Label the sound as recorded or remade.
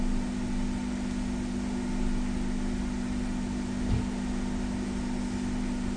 recorded